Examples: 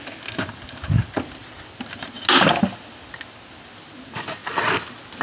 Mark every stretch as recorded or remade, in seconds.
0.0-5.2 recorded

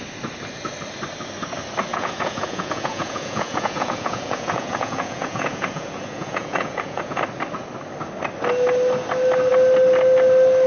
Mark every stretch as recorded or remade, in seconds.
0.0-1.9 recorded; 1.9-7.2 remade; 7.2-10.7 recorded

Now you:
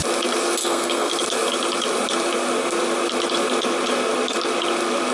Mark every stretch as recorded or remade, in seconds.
0.0-0.6 recorded; 0.6-1.1 remade; 1.1-5.1 recorded